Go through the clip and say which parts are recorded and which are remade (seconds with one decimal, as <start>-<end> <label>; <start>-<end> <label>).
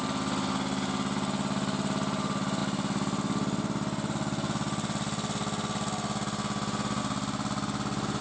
0.0-8.2 recorded